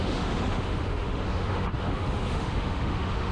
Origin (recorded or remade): remade